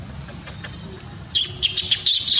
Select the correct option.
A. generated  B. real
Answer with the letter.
B